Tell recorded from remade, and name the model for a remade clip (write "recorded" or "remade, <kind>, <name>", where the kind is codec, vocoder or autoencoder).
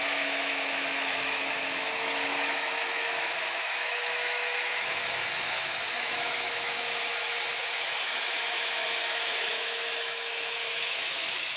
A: remade, autoencoder, DAC-VAE